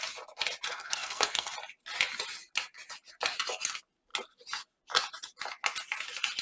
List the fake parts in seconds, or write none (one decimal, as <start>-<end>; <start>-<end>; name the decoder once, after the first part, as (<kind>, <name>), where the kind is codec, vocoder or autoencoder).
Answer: 0.7-1.5 (codec, SNAC)